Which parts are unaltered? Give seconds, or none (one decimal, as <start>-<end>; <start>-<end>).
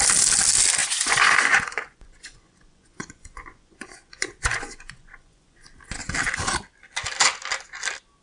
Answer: 0.0-0.8; 5.7-8.2